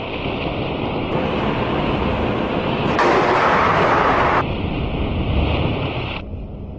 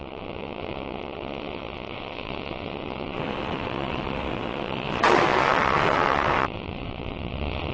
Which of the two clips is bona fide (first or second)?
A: first